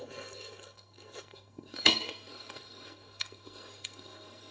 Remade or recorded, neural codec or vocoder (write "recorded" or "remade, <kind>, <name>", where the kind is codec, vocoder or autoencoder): remade, codec, SNAC